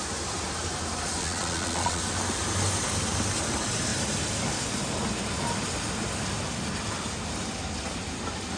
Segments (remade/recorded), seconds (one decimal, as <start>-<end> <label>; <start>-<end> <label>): 0.0-1.2 recorded; 1.2-2.0 remade; 2.0-8.6 recorded